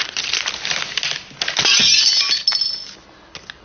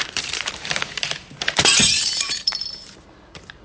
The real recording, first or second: first